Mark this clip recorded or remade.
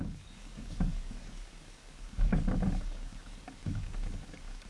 remade